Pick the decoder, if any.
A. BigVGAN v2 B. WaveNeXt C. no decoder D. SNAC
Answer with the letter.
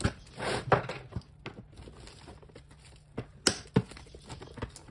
C